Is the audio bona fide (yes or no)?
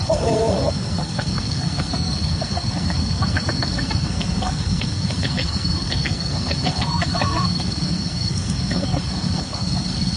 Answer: no